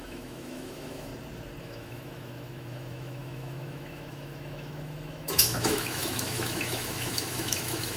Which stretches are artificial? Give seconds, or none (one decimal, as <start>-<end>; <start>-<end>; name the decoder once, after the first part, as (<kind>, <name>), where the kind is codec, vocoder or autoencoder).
0.0-1.1 (autoencoder, DAC-VAE); 1.6-8.0